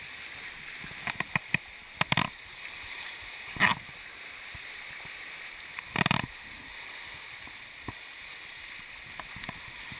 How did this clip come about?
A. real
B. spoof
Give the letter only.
A